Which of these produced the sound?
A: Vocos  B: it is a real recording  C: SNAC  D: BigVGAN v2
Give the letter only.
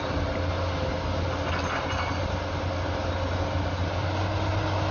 B